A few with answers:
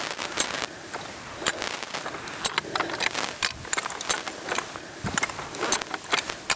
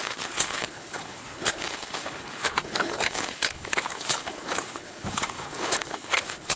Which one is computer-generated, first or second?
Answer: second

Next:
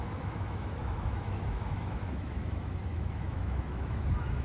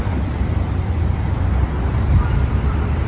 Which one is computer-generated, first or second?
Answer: first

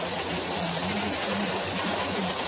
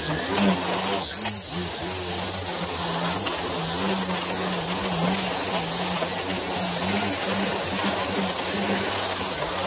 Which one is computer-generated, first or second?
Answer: first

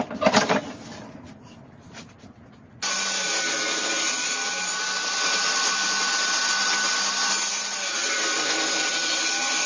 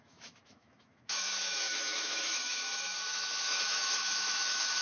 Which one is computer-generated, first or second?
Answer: second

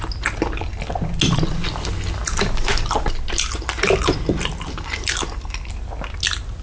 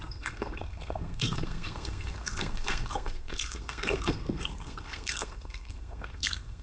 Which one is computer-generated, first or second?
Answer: second